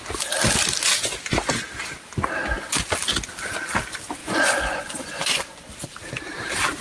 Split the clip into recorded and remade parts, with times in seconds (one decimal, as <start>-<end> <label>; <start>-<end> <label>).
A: 0.0-4.2 recorded; 4.2-5.7 remade; 5.7-6.8 recorded